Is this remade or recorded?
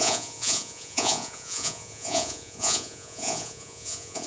remade